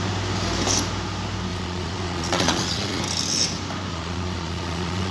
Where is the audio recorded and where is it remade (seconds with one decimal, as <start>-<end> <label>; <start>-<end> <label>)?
0.0-1.5 recorded; 1.5-3.0 remade; 3.0-3.9 recorded; 3.9-5.1 remade